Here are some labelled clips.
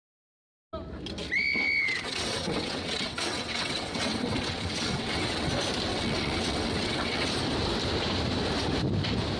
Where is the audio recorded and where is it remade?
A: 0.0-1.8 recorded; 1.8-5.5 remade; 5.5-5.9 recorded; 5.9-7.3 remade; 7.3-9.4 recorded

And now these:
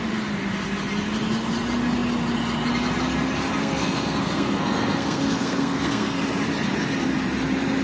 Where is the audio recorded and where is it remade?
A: 0.0-3.6 recorded; 3.6-6.2 remade; 6.2-7.8 recorded